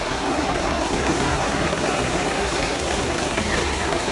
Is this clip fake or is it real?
fake